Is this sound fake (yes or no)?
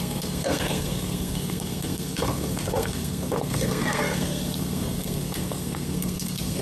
yes